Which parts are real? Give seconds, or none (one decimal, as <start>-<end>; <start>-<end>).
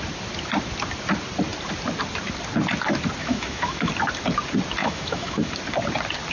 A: 0.0-3.2; 3.9-4.8; 5.5-6.3